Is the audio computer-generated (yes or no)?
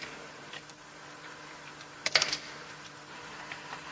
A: yes